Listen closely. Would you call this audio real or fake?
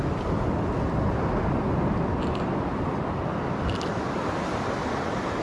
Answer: real